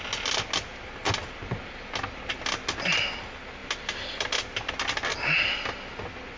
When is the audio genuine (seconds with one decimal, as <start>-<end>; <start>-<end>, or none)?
0.0-6.4